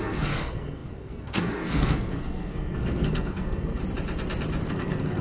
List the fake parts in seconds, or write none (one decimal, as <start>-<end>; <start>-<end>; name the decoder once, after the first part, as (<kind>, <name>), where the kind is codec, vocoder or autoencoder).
0.0-3.8 (codec, SNAC); 4.7-5.2